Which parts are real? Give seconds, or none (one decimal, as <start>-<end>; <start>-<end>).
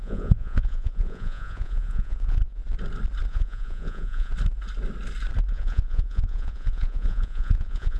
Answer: 2.6-3.3; 4.3-5.5